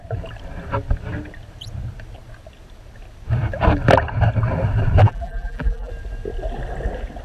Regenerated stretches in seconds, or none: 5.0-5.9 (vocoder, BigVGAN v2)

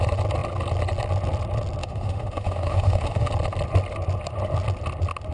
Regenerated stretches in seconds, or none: 1.8-3.3 (autoencoder, DAC-VAE)